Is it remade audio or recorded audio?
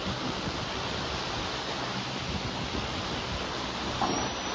recorded